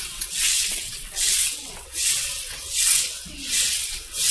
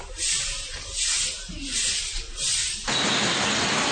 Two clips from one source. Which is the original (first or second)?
second